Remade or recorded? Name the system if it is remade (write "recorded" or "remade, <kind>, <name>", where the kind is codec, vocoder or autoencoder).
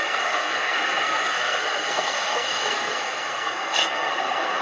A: remade, codec, SNAC